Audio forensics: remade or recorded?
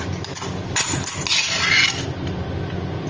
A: recorded